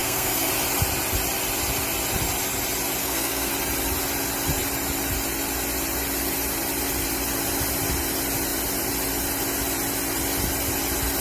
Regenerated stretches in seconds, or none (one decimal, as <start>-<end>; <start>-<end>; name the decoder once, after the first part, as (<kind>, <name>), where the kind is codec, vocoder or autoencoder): 0.0-0.5 (codec, SNAC); 3.0-3.5